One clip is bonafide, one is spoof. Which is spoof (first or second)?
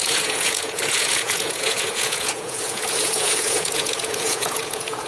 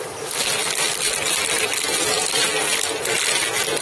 first